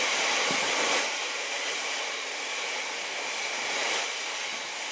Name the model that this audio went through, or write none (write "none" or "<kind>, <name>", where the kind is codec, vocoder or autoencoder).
none